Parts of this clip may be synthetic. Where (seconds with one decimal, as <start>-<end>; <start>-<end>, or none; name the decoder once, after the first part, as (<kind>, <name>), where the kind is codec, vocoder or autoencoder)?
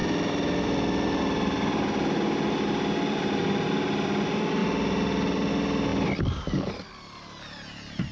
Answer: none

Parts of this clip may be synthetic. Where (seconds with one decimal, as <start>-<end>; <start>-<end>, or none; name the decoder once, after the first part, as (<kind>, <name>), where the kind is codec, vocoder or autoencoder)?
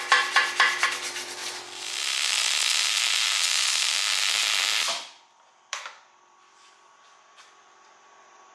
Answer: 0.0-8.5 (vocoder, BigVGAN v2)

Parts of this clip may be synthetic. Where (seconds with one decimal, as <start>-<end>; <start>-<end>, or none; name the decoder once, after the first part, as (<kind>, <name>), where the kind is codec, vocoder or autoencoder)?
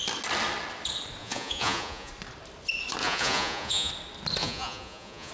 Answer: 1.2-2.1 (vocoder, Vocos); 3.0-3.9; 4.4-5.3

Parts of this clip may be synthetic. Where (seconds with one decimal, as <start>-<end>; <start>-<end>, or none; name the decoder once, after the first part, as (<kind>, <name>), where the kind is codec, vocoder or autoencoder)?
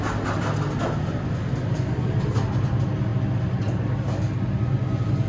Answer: none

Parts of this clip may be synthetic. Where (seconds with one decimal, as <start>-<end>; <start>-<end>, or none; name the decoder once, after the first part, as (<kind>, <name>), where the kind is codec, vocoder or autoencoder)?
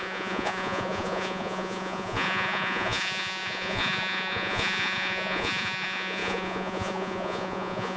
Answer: 0.0-8.0 (vocoder, Vocos)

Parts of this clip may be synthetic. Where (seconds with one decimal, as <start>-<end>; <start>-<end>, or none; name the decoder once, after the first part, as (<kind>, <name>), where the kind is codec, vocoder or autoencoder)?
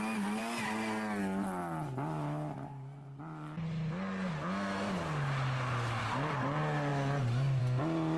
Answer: none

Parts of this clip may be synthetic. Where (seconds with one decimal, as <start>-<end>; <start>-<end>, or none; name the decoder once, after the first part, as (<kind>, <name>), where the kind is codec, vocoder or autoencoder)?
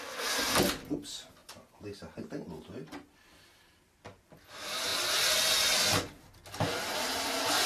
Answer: none